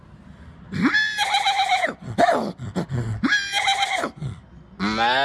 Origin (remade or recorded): recorded